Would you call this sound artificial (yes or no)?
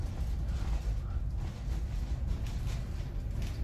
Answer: no